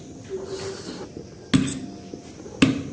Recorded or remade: recorded